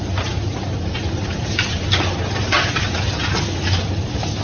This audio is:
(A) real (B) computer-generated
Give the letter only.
A